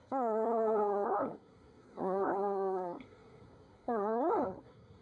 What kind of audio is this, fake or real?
fake